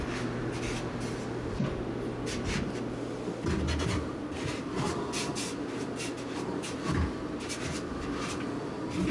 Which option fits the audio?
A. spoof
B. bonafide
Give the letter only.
B